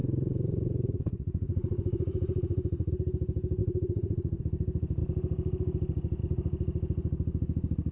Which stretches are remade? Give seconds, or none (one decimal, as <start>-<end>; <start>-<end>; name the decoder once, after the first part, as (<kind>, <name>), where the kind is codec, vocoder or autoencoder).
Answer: 0.0-2.9 (vocoder, Vocos); 3.6-4.4